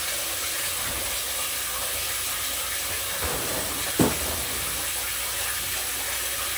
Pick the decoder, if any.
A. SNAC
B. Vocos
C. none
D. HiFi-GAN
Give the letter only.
C